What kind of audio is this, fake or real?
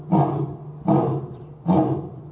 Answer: real